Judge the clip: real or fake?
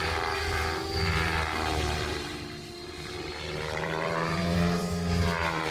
fake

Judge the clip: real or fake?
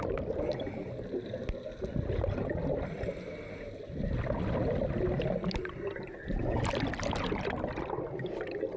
real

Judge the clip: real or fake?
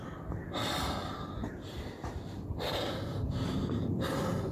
real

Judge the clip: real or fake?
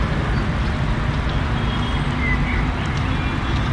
real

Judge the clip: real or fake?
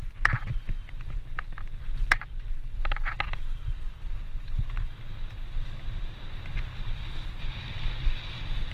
real